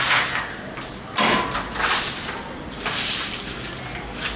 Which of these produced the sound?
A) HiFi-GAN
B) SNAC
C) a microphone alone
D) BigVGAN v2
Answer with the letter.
C